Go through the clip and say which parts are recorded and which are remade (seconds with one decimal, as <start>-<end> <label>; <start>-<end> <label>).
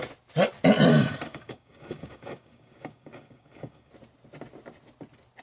0.0-0.9 recorded; 0.9-3.9 remade; 3.9-5.4 recorded